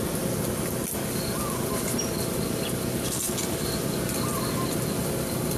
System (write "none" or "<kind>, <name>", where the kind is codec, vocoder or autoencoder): none